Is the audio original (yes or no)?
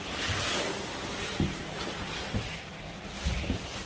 yes